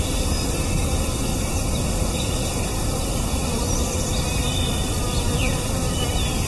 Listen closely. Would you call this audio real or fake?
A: fake